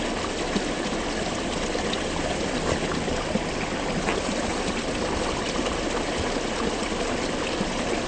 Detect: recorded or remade recorded